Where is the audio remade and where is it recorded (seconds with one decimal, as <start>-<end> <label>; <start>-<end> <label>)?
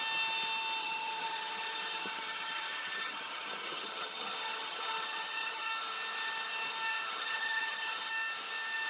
0.0-0.8 recorded; 0.8-5.7 remade; 5.7-6.9 recorded; 6.9-8.1 remade; 8.1-8.9 recorded